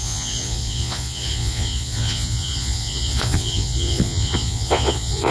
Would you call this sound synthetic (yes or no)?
yes